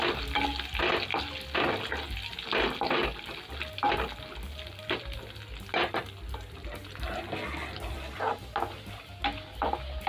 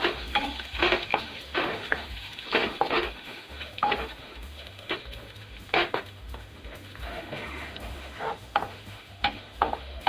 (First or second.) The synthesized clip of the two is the second